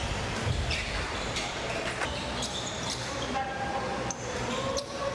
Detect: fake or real fake